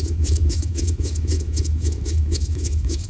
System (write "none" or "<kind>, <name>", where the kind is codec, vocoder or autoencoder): autoencoder, DAC-VAE